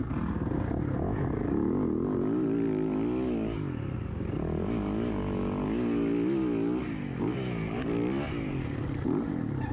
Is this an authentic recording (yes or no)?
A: yes